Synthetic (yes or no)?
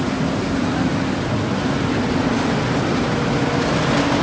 no